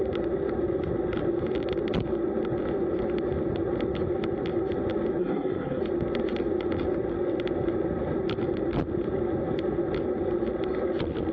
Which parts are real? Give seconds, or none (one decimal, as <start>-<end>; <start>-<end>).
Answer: 0.0-5.2; 5.8-11.3